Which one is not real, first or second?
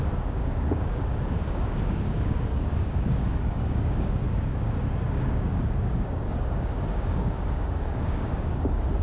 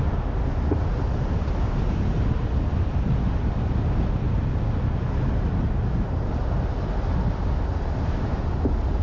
first